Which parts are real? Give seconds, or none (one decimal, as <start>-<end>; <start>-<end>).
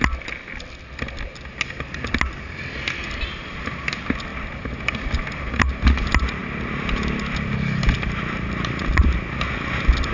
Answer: 0.0-10.1